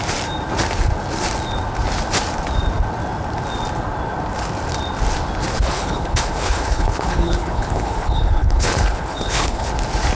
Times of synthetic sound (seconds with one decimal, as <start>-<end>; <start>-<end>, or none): 5.5-9.7